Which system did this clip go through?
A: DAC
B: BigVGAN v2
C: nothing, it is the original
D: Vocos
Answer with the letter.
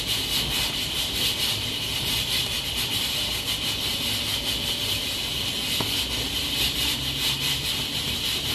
C